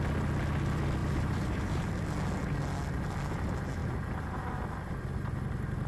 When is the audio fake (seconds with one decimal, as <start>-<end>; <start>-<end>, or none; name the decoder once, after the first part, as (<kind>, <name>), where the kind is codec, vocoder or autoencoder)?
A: 1.0-1.9 (vocoder, BigVGAN v2)